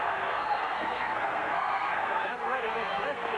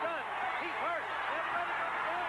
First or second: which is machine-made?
first